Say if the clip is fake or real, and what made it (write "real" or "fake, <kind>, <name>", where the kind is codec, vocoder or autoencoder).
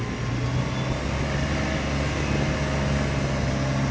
real